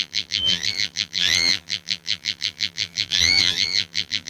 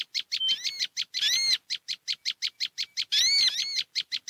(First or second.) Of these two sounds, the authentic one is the second